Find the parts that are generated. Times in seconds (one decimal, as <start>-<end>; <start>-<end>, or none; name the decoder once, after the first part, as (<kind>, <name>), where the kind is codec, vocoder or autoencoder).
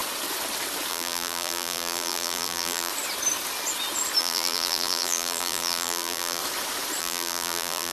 0.9-2.9 (vocoder, BigVGAN v2); 4.2-6.4; 7.0-7.9